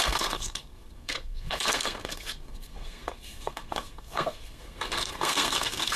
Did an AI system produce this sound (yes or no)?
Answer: yes